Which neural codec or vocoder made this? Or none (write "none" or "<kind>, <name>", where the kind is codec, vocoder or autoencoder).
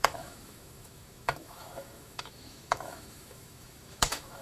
autoencoder, DAC-VAE